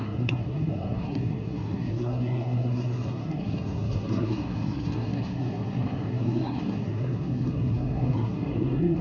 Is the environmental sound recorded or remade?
remade